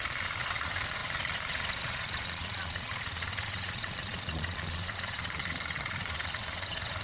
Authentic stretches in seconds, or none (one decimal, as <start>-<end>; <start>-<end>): none